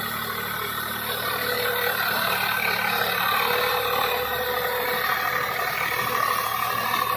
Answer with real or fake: real